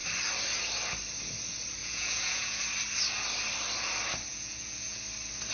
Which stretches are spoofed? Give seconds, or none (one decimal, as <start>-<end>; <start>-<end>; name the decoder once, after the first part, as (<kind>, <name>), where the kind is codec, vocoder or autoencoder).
1.8-2.6 (vocoder, Vocos); 4.3-5.0